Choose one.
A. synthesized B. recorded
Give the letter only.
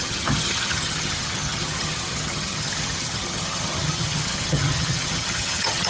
A